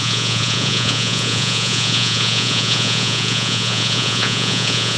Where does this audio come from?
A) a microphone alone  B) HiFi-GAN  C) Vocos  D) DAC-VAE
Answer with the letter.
C